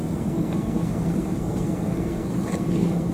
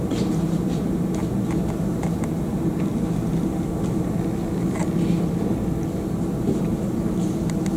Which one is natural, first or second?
second